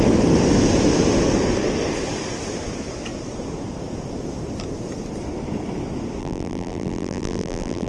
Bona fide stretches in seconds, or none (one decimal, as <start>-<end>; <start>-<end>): 0.0-6.2